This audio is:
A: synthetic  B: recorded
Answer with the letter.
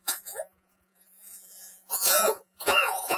A